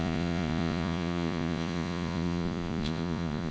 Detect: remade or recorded remade